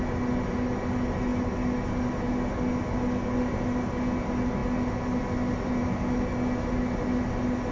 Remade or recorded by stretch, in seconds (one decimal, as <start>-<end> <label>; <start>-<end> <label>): 0.0-7.7 recorded